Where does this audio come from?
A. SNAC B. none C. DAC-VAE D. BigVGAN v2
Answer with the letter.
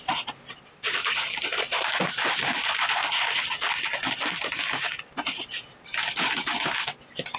B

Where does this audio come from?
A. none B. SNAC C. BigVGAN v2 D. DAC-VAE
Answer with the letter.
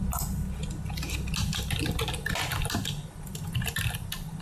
A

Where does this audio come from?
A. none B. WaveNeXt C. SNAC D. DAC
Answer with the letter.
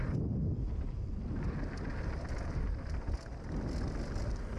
A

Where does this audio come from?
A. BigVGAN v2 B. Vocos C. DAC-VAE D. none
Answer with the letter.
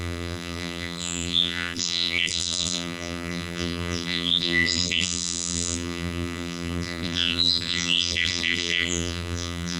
A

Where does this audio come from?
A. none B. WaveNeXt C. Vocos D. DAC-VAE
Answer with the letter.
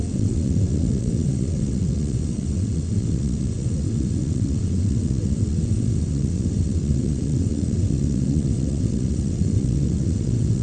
B